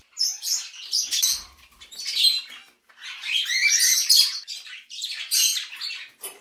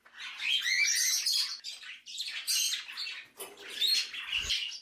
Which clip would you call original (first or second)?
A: second